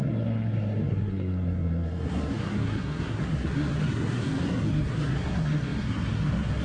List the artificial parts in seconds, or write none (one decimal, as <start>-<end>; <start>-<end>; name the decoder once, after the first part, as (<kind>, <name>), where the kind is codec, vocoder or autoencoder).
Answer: 0.0-6.6 (codec, SNAC)